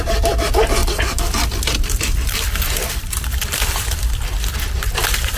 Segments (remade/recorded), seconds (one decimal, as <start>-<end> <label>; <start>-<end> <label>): 0.0-0.8 recorded; 0.8-4.0 remade; 4.0-5.4 recorded